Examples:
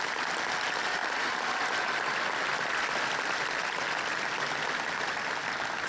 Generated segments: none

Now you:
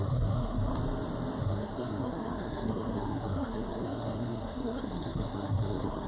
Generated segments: 0.0-0.7 (codec, SNAC); 1.4-6.1

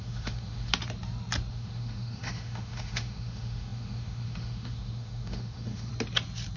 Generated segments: 0.0-0.7 (autoencoder, DAC-VAE); 1.5-5.9